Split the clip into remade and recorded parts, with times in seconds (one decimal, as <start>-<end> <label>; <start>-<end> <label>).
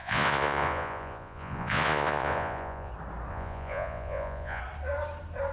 0.0-2.9 remade; 2.9-3.3 recorded; 3.3-4.6 remade; 4.6-5.5 recorded